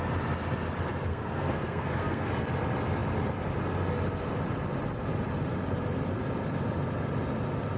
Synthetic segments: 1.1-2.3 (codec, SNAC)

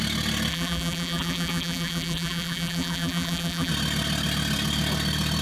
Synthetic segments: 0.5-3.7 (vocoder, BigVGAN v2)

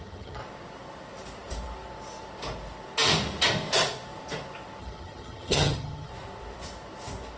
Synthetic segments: 0.0-0.4 (vocoder, HiFi-GAN); 4.8-6.1

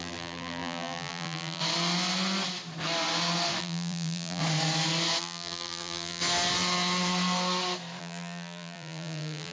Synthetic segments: 0.0-1.6 (vocoder, BigVGAN v2); 3.6-4.4; 5.2-6.2; 8.0-9.5

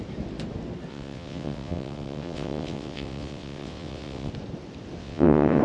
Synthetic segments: 0.9-4.3 (vocoder, WaveNeXt); 5.0-5.6

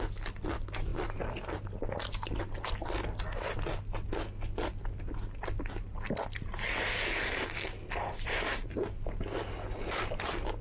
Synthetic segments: none

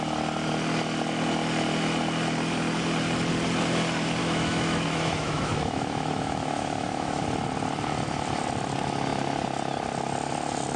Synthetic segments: 4.2-7.2 (autoencoder, DAC-VAE)

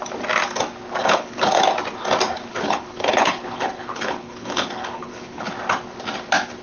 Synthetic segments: 1.0-1.6 (codec, HILCodec); 2.5-5.5